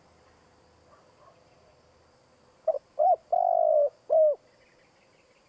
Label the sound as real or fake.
real